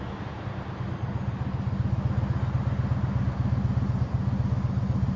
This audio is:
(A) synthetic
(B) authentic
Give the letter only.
B